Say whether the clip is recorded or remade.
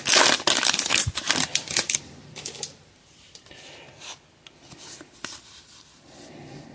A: recorded